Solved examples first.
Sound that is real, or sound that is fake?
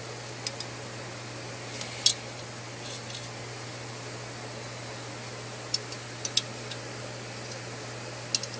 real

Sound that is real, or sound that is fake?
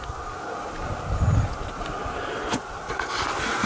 real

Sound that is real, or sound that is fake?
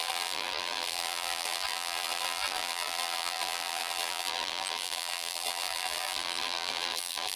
fake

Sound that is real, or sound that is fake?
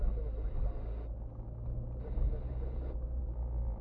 real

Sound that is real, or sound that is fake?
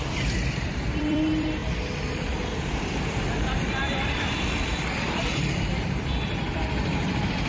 fake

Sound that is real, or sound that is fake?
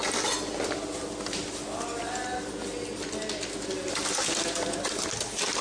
real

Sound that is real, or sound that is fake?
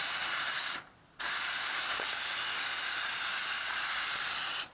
real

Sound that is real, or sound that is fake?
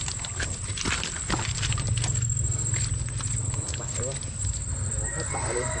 real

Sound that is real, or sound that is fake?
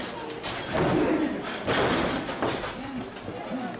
real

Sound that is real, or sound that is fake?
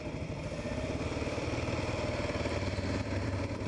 fake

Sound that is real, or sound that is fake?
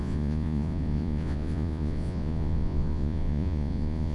fake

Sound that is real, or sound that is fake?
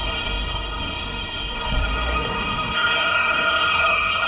fake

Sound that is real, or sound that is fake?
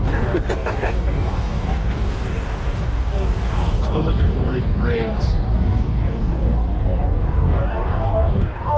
fake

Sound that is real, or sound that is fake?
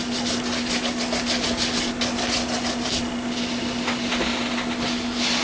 real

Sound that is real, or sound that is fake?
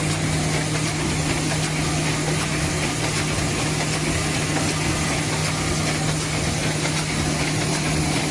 real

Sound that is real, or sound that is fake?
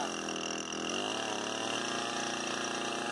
real